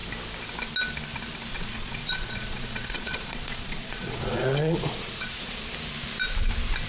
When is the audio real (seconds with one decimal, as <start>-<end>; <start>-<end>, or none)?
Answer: 0.0-1.5; 5.6-6.9